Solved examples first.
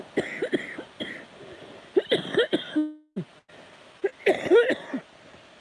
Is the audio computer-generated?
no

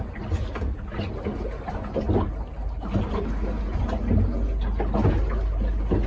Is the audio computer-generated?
no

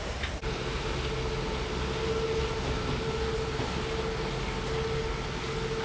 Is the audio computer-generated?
no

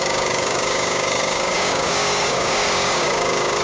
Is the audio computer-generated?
yes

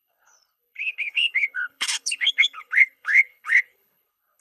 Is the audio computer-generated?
yes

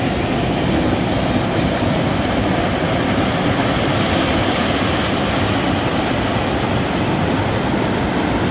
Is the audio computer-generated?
no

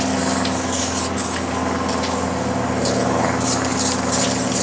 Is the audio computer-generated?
no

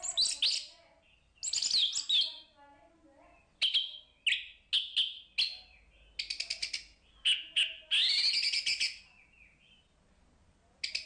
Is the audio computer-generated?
no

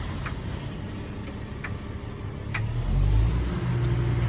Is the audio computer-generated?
no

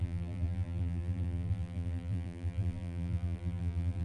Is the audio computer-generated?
yes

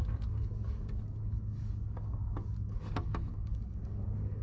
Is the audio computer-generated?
yes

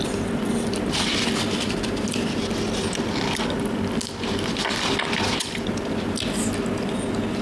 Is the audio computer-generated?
no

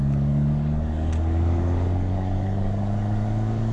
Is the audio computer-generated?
yes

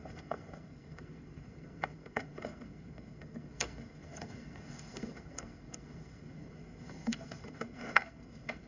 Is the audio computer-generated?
yes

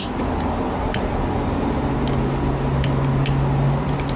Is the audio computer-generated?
no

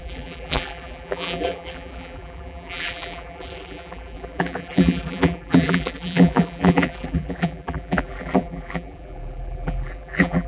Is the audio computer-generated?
yes